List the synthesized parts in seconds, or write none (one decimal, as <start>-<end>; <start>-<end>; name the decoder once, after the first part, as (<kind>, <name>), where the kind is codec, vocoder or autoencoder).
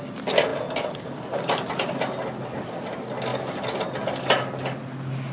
none